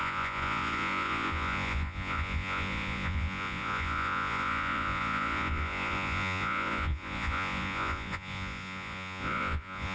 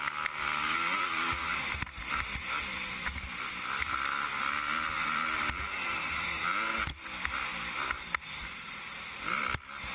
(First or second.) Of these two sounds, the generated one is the first